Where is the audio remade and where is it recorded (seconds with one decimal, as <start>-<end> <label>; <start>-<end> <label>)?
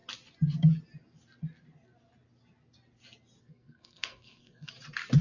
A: 0.0-3.4 recorded; 3.4-4.7 remade; 4.7-5.2 recorded